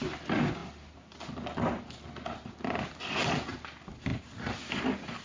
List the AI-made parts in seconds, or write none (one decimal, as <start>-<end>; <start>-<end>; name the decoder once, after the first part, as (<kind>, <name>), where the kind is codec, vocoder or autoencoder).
none